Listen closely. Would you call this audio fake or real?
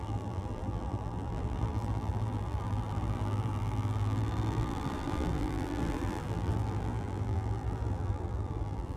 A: fake